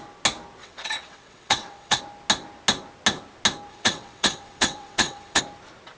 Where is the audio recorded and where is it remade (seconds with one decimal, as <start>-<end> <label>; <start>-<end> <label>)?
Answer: 0.0-0.6 recorded; 0.6-2.0 remade; 2.0-3.7 recorded; 3.7-5.4 remade; 5.4-6.0 recorded